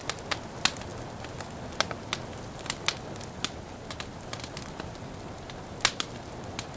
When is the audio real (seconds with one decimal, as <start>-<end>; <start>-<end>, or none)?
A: 0.0-6.8